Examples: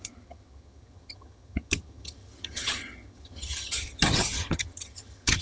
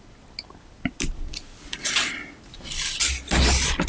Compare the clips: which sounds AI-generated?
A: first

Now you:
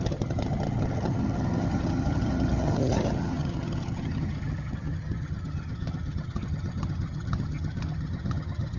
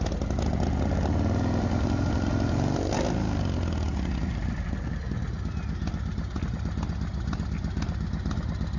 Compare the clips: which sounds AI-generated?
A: first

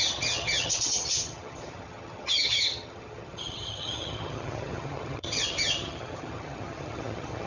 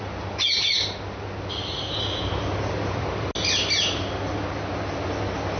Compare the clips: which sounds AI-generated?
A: first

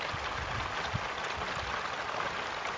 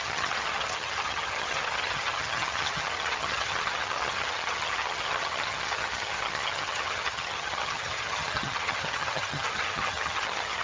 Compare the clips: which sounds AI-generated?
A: second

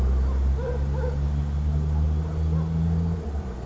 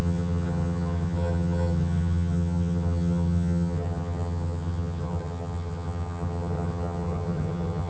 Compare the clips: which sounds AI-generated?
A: second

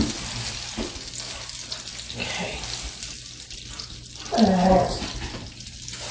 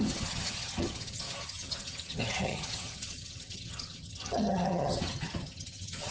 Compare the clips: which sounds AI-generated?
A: second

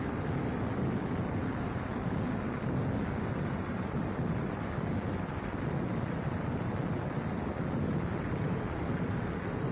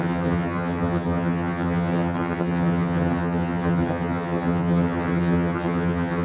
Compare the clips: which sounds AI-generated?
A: second